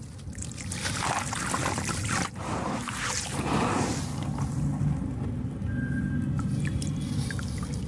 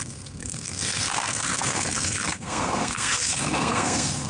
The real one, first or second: first